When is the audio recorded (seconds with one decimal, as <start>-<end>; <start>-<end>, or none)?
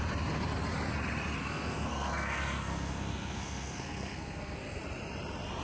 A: 0.0-1.4; 4.8-5.6